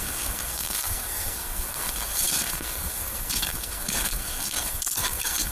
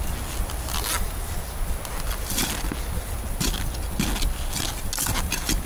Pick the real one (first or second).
second